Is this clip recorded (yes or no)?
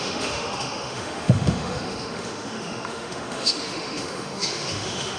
no